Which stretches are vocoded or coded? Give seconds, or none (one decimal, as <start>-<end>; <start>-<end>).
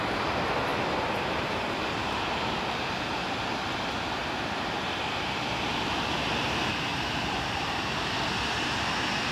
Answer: 0.7-3.2; 4.2-4.9; 6.9-7.8